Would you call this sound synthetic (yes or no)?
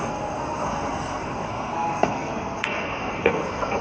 yes